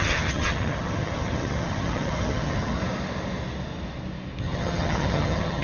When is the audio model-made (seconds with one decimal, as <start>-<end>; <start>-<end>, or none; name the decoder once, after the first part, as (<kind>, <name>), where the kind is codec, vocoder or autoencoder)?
0.0-2.8 (vocoder, HiFi-GAN); 4.4-5.6